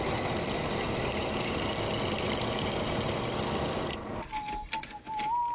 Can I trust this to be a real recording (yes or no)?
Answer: yes